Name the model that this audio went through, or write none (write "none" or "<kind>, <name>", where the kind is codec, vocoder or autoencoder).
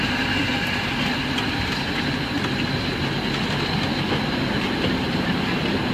none